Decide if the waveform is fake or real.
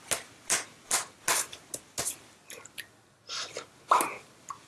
real